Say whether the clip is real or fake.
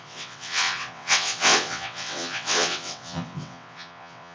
fake